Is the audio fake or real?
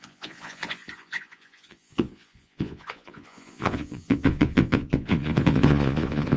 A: fake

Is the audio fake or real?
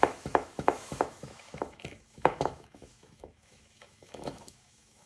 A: fake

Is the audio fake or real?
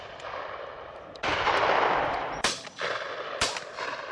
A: fake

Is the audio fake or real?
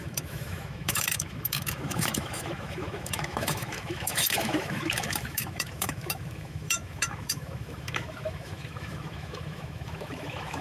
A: fake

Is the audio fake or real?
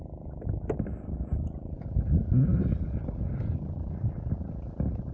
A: real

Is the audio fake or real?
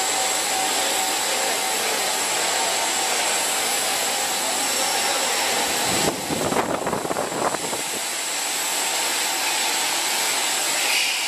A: real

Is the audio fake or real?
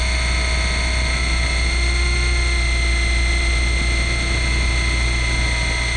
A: real